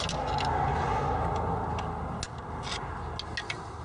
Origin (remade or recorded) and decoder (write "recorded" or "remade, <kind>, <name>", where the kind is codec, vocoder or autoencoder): recorded